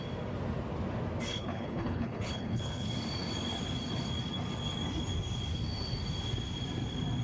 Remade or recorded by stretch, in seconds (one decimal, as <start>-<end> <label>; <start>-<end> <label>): 0.0-1.3 recorded; 1.3-2.9 remade; 2.9-7.2 recorded